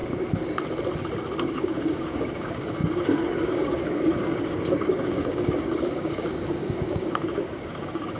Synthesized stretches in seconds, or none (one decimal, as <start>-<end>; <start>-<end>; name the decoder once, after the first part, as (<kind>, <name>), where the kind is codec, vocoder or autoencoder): 1.4-8.2 (codec, DAC)